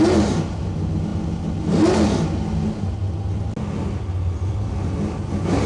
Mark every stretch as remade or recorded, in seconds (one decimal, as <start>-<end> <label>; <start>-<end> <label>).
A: 0.0-5.7 recorded